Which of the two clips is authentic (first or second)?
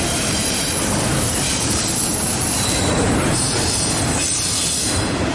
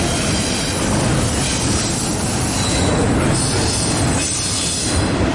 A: second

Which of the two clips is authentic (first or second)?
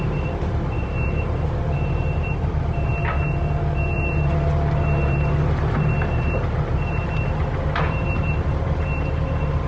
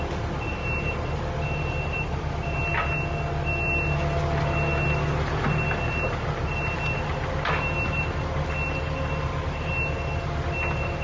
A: second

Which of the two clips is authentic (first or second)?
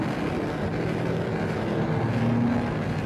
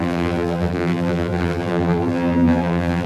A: first